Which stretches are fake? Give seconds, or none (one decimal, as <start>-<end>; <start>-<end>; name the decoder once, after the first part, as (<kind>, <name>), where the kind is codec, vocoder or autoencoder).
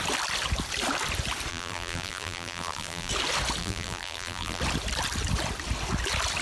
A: 1.5-3.1 (vocoder, BigVGAN v2); 3.6-4.6